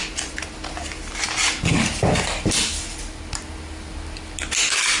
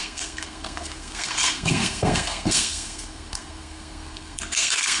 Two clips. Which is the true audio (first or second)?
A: first